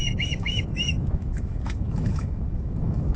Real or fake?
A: fake